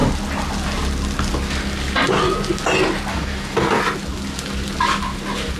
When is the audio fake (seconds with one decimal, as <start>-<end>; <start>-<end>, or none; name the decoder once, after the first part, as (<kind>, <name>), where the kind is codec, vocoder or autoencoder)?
3.1-3.8 (codec, DAC)